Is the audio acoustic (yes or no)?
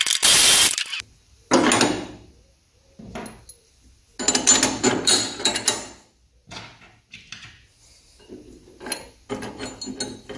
yes